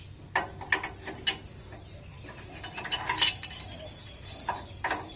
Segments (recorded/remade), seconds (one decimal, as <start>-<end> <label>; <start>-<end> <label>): 0.0-5.2 recorded